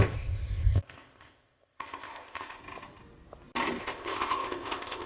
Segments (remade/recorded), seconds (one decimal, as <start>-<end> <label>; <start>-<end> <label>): 0.0-2.6 remade; 2.6-3.8 recorded; 3.8-5.1 remade